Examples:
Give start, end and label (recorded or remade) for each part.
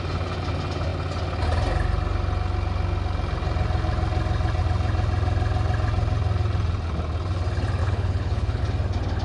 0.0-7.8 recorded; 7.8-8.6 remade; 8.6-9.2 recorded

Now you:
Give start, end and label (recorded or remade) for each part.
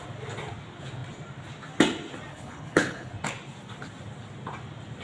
0.0-2.3 recorded; 2.3-3.1 remade; 3.1-5.0 recorded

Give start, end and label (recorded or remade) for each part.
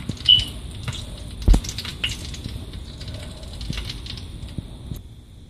0.0-5.5 recorded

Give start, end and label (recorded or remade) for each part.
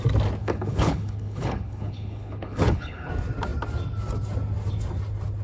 0.0-0.4 recorded; 0.4-3.1 remade; 3.1-5.4 recorded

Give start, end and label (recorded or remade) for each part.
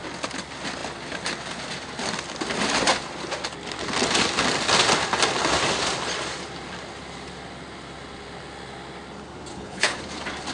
0.0-9.5 recorded; 9.5-10.0 remade; 10.0-10.5 recorded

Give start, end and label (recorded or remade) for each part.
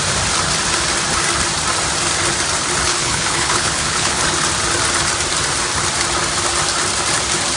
0.0-2.9 recorded; 2.9-4.2 remade; 4.2-7.6 recorded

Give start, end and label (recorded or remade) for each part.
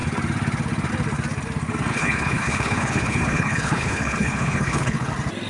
0.0-1.9 recorded; 1.9-5.1 remade; 5.1-5.5 recorded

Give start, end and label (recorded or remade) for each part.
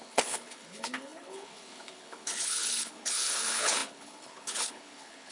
0.0-5.3 remade